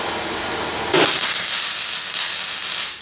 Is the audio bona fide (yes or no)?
yes